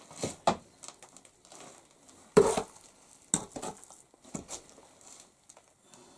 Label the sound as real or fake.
real